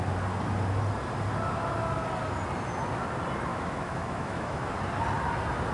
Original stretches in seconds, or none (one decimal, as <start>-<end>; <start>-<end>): 0.0-3.5; 4.7-5.7